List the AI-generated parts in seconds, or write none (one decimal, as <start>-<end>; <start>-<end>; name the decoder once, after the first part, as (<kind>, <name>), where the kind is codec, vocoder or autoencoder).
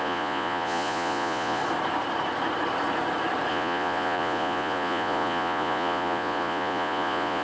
0.0-1.6 (vocoder, Vocos); 3.5-7.4